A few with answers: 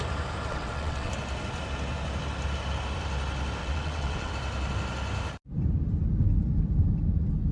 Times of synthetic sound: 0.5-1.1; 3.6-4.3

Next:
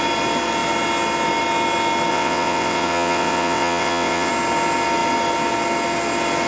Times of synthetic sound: 2.1-4.3

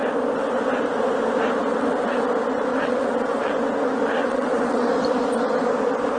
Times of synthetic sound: 1.7-2.3; 2.7-3.5; 4.2-4.9

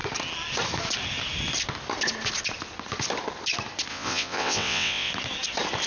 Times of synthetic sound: 3.9-5.1

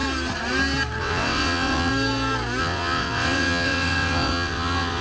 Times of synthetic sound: 1.0-1.9; 2.6-5.0